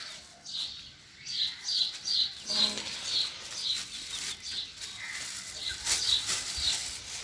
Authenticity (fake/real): real